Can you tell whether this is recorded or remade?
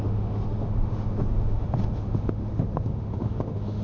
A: remade